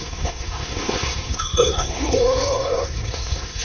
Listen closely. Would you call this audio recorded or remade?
remade